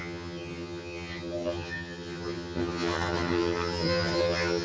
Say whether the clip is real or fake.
fake